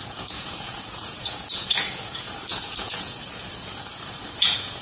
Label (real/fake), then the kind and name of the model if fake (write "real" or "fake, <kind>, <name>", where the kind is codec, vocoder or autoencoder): fake, vocoder, Vocos